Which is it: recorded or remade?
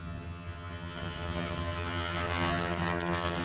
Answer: remade